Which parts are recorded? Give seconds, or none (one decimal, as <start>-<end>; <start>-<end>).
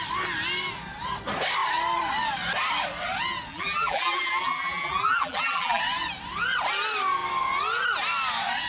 0.0-3.5; 5.8-8.7